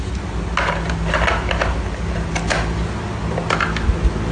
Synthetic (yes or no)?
no